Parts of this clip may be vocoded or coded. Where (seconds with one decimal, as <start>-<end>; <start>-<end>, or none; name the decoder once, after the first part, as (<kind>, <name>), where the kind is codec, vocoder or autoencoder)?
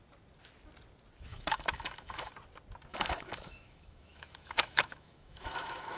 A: 1.3-2.3 (autoencoder, DAC-VAE); 2.9-6.0